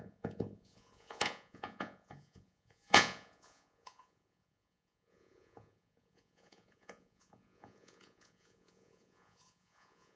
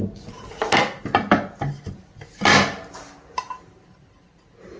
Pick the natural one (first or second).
second